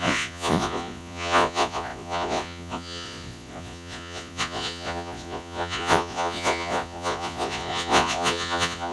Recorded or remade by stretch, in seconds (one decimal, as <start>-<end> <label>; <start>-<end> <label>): 0.0-8.9 remade